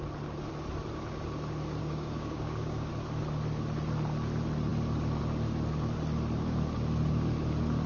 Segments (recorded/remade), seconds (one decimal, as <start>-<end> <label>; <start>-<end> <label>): 0.0-1.8 recorded; 1.8-2.9 remade; 2.9-7.9 recorded